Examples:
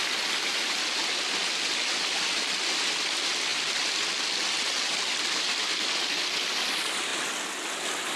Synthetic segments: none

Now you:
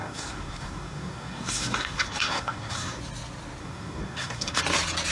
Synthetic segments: 0.0-3.0 (codec, SNAC); 3.6-4.6

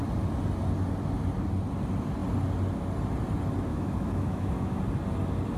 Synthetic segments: 3.7-4.8 (autoencoder, DAC-VAE)